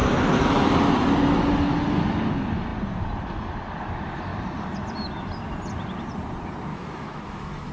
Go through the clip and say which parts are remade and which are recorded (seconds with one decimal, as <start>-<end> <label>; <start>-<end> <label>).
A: 0.0-0.7 remade; 0.7-6.7 recorded; 6.7-7.7 remade